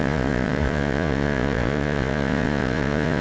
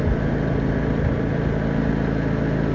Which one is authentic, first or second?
second